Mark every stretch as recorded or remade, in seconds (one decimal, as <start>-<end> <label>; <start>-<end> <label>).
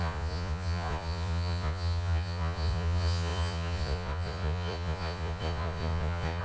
0.0-6.4 remade